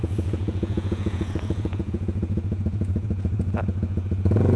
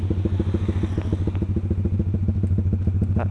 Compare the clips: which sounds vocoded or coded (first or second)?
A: first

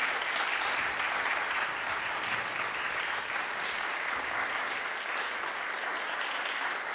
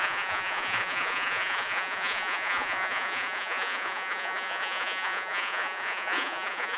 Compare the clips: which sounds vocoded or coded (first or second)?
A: second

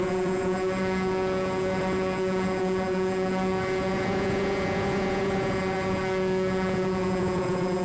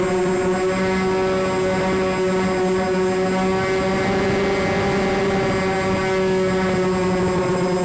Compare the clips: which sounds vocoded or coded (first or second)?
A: first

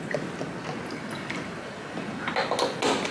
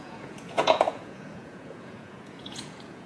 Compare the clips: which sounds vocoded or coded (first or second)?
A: second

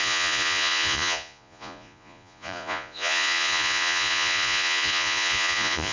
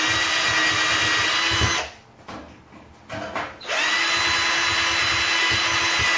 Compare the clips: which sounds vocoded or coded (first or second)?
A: first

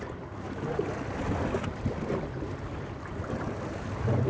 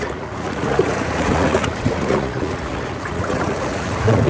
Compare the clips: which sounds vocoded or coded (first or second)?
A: second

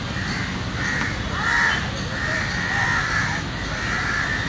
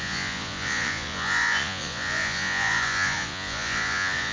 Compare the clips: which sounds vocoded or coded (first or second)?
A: second